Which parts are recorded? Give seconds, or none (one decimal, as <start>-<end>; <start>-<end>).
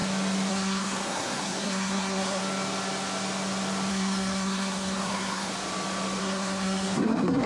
0.0-0.5; 2.4-3.9; 5.5-6.2